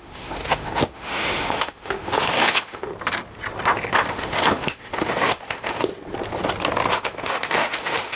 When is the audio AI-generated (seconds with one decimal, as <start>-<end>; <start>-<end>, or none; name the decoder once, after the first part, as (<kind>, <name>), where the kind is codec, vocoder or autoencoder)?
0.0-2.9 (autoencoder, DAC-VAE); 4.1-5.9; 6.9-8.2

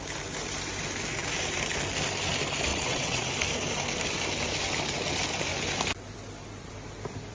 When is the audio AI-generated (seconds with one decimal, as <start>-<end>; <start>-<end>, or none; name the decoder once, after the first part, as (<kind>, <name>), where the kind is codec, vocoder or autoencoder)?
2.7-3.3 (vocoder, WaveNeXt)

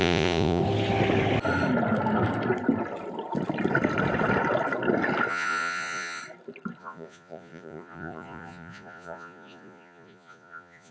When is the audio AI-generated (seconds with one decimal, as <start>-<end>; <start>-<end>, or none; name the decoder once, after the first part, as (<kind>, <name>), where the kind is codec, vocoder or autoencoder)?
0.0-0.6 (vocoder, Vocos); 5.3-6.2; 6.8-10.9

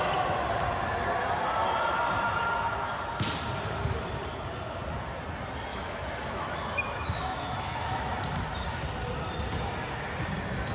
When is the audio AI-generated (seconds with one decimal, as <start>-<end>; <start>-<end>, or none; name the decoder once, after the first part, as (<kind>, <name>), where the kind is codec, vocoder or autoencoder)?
5.7-8.1 (autoencoder, DAC-VAE)

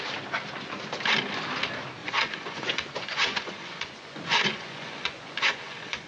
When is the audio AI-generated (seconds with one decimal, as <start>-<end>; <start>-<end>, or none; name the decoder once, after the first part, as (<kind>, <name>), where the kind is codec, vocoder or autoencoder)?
2.0-6.1 (vocoder, Vocos)